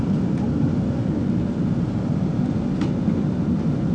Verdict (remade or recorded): recorded